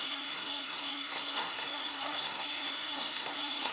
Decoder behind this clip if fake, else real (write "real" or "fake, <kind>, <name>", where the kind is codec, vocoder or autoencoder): fake, codec, SNAC